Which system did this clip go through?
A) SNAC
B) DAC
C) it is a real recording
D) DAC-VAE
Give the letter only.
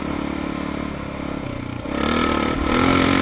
C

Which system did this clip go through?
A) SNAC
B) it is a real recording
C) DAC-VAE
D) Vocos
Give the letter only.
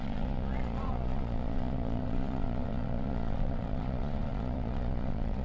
D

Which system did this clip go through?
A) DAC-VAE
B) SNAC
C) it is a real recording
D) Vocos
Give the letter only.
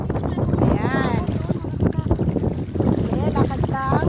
C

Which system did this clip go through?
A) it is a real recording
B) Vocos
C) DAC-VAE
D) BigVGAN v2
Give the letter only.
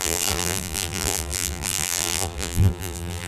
D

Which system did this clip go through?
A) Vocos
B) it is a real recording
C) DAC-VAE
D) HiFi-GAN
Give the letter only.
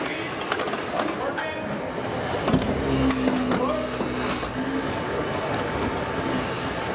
B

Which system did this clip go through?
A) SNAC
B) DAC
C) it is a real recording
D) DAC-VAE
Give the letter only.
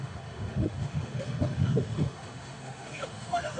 D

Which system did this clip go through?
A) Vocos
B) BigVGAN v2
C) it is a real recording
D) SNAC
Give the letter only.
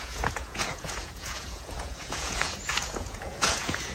A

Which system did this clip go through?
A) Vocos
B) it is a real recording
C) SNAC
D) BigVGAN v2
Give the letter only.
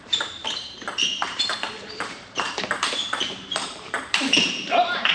D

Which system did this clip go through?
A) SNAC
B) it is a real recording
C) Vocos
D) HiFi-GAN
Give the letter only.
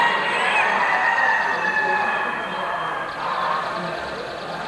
B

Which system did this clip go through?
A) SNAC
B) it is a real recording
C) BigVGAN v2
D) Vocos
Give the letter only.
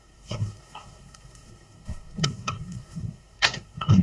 A